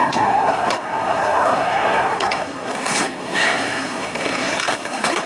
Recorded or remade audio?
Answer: remade